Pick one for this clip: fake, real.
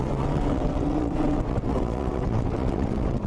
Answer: fake